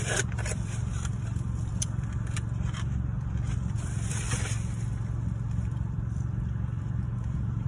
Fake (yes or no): yes